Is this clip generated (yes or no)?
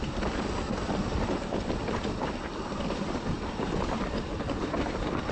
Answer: no